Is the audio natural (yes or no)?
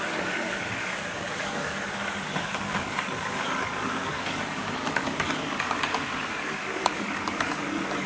no